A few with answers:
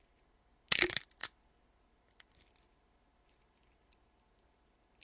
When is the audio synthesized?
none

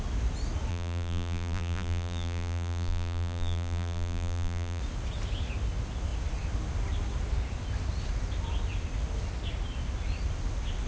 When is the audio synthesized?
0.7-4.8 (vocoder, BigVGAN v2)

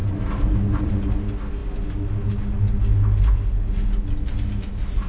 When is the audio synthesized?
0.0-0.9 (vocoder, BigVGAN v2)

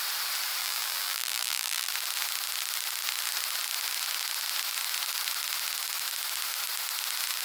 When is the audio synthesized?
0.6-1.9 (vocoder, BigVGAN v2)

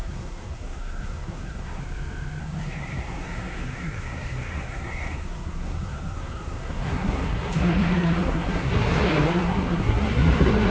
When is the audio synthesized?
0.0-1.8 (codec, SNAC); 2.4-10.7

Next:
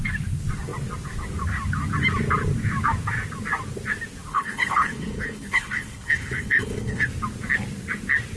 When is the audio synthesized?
4.3-7.1 (codec, HILCodec)

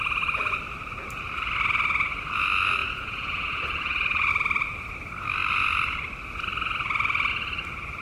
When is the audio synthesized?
2.8-4.3 (vocoder, Vocos)

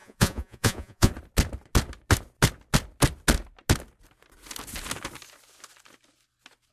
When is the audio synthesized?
0.0-1.1 (vocoder, Vocos)